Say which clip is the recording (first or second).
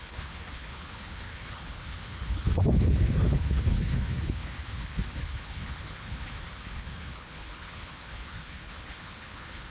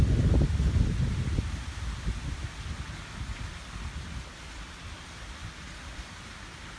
second